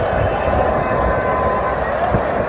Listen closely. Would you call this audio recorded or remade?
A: recorded